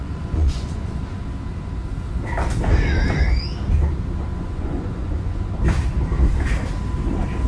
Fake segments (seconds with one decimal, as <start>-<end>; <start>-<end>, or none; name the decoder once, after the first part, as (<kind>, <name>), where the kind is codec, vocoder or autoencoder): 0.0-1.0 (vocoder, Vocos); 4.3-5.4